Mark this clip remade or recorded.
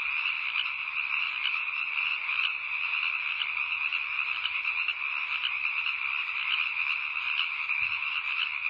recorded